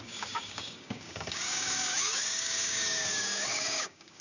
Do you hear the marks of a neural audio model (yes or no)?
yes